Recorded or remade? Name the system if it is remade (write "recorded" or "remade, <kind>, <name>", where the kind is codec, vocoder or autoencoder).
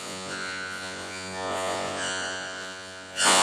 remade, vocoder, Vocos